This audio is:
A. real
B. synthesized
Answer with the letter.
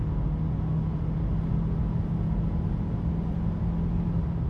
A